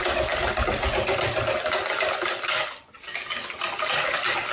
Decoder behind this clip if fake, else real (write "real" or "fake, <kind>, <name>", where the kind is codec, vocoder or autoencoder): real